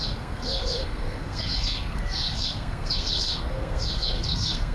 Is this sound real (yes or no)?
no